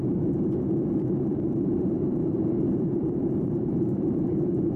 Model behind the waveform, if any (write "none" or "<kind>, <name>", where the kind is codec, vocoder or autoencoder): vocoder, BigVGAN v2